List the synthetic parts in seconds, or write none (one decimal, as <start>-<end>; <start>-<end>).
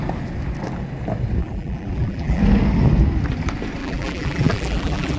1.4-2.4; 3.8-5.2